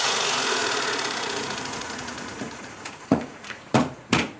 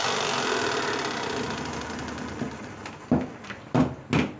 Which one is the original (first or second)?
second